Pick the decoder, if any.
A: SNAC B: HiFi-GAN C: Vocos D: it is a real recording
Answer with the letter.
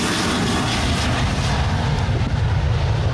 D